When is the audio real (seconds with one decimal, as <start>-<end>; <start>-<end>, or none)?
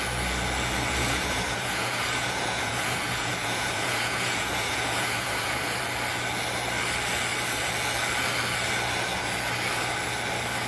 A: 0.0-1.0; 5.8-10.7